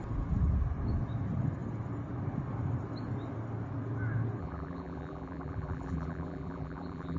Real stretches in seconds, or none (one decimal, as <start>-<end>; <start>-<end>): 0.0-4.4

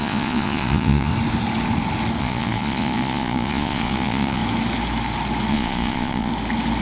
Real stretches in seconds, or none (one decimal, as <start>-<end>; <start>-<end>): 1.1-2.2; 4.4-5.5; 6.3-6.8

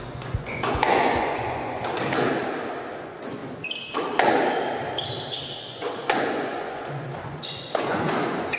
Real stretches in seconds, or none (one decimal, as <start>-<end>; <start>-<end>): 1.8-3.0; 3.4-5.6

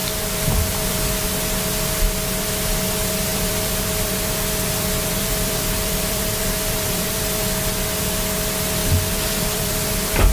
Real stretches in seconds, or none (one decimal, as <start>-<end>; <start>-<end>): 1.3-3.3; 7.2-8.8

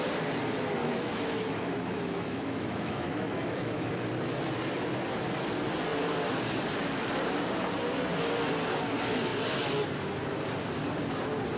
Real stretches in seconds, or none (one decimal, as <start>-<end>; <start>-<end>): 0.0-0.8; 3.9-11.6

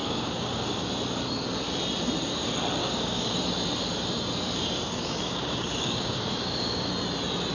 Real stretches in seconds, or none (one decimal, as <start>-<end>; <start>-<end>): 0.9-2.8; 3.4-4.9; 6.9-7.5